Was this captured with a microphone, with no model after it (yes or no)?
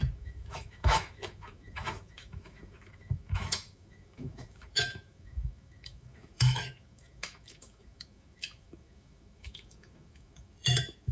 no